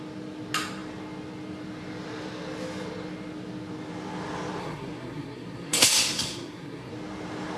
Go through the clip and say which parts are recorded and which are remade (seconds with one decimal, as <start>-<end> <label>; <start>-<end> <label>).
0.0-4.6 recorded; 4.6-6.9 remade; 6.9-7.6 recorded